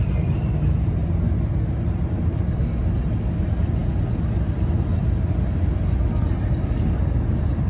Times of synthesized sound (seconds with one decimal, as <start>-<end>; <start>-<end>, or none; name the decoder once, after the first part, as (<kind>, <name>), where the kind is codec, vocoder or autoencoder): none